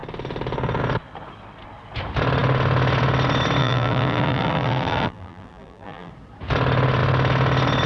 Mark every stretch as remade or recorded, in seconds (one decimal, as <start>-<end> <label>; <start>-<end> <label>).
0.0-3.6 recorded; 3.6-6.1 remade; 6.1-7.9 recorded